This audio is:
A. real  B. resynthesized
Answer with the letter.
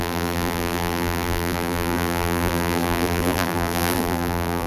B